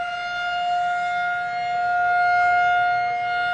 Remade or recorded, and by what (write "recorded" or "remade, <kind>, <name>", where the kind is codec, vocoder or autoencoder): recorded